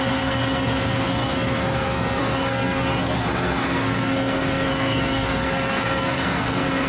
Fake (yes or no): yes